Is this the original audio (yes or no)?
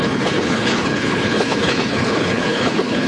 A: no